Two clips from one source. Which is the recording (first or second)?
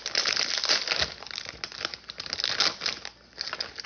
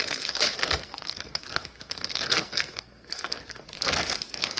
first